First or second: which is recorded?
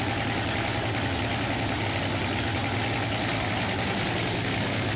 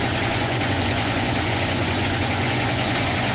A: first